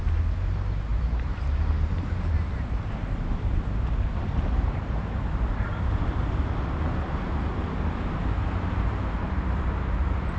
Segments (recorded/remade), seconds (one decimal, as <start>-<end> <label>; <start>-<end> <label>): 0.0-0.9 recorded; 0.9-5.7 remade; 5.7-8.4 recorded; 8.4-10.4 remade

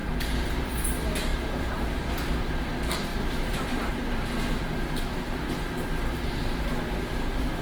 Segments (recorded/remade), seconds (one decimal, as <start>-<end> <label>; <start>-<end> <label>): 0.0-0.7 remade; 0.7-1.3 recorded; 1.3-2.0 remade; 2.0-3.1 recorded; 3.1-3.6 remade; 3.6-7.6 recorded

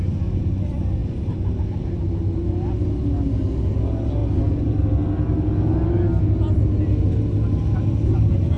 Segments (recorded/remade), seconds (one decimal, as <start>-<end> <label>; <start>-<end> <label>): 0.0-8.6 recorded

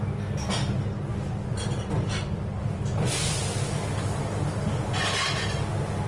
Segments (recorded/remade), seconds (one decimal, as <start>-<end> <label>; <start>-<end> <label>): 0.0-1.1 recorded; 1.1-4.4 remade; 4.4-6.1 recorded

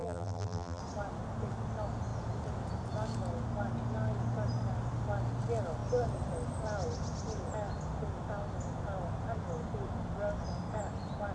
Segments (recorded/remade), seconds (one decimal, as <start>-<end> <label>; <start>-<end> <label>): 0.0-0.8 remade; 0.8-11.3 recorded

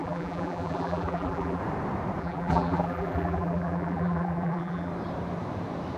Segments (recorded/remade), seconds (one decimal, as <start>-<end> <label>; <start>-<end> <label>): 0.0-1.6 remade; 1.6-2.2 recorded; 2.2-4.9 remade; 4.9-6.0 recorded

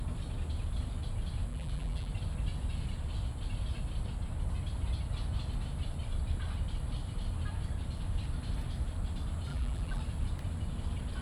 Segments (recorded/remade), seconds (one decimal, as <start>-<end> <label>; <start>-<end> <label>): 0.0-1.5 recorded; 1.5-2.1 remade; 2.1-9.5 recorded; 9.5-10.0 remade; 10.0-11.2 recorded

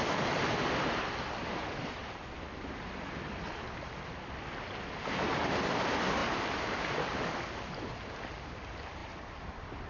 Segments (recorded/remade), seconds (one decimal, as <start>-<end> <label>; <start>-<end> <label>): 0.0-2.0 recorded; 2.0-4.2 remade; 4.2-6.2 recorded; 6.2-7.1 remade; 7.1-9.0 recorded; 9.0-9.9 remade